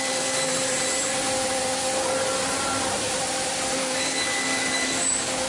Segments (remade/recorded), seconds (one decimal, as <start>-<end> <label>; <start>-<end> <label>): 0.0-0.5 remade; 0.5-3.8 recorded; 3.8-5.5 remade